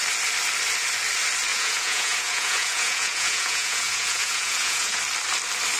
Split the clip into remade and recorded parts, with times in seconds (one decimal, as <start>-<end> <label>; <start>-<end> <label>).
0.0-1.5 recorded; 1.5-5.0 remade; 5.0-5.8 recorded